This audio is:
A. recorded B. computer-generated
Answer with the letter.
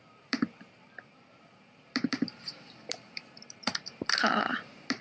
B